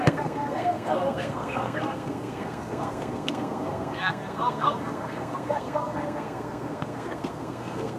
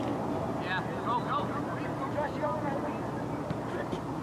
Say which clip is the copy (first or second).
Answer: first